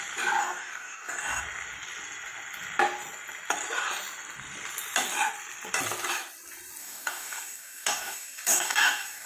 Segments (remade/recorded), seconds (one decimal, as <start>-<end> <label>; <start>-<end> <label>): 0.0-0.4 recorded; 0.4-1.4 remade; 1.4-6.8 recorded; 6.8-9.3 remade